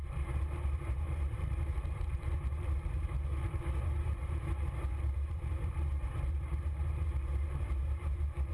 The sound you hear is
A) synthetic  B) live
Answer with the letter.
A